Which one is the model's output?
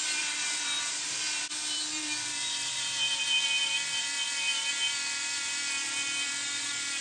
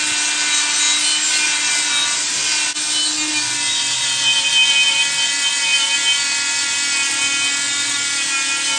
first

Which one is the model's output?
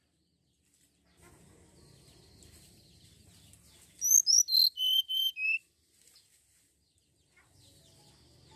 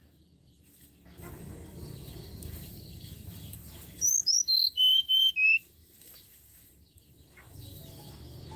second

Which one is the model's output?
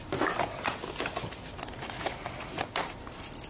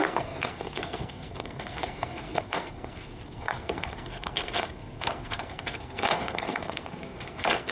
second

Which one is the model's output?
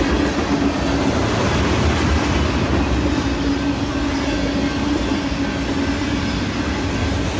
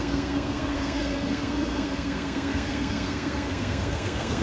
second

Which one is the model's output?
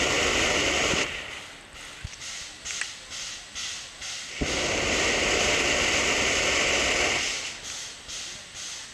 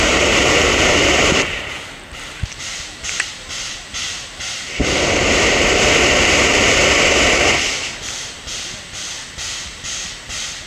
second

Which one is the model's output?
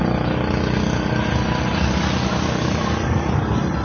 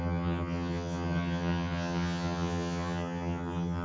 second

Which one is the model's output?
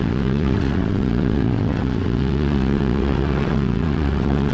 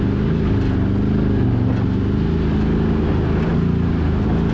first